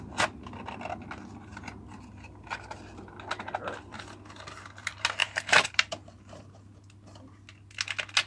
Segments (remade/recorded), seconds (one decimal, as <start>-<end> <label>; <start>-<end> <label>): 0.0-5.2 recorded; 5.2-6.4 remade; 6.4-8.3 recorded